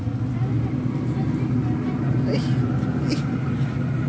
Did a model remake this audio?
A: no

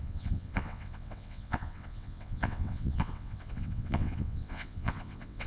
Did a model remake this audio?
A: yes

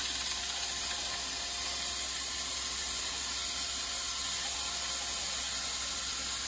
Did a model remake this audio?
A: no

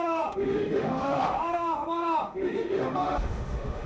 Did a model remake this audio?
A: yes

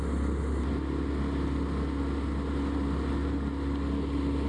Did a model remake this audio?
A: no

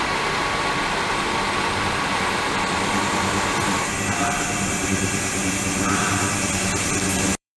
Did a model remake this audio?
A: yes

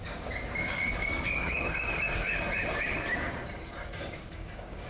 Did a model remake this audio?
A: yes